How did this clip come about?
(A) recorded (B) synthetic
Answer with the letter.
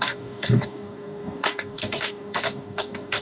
B